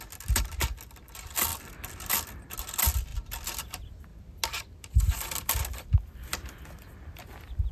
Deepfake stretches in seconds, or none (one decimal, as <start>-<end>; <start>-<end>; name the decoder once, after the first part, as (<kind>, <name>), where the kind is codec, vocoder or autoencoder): none